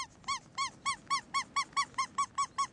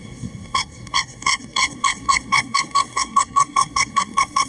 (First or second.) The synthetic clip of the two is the second